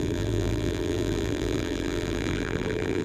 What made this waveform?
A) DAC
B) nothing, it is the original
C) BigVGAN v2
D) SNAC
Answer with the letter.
C